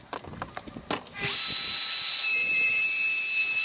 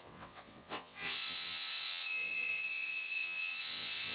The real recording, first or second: first